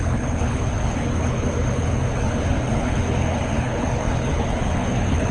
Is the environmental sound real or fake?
fake